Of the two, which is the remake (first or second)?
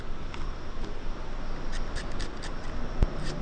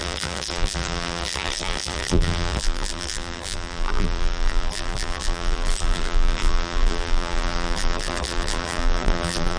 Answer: second